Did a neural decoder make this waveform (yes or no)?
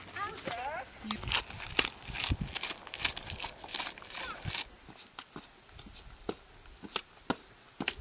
no